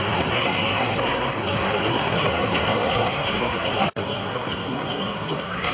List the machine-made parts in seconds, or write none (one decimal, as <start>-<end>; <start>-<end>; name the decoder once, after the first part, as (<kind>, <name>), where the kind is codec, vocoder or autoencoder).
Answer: 0.0-5.7 (codec, SNAC)